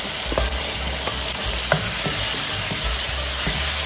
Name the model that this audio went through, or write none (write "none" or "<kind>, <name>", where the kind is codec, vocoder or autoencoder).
none